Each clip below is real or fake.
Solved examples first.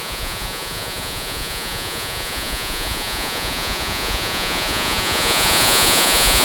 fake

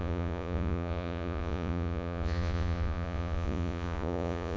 fake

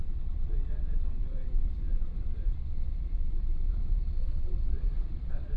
fake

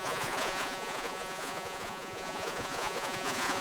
fake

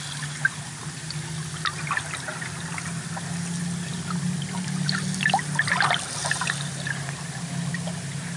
real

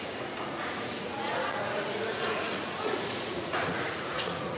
fake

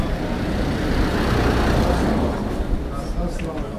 real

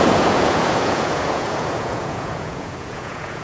fake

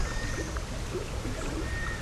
real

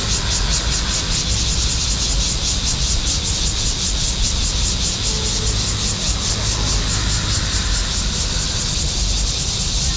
real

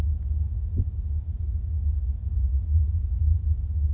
real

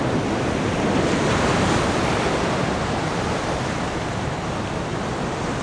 real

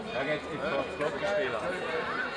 real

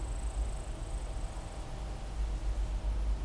real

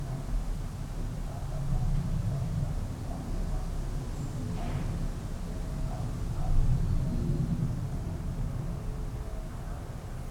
real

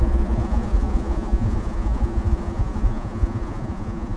fake